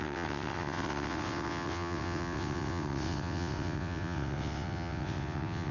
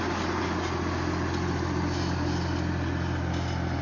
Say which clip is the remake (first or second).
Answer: first